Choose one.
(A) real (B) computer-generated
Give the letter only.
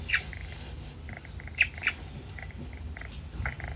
A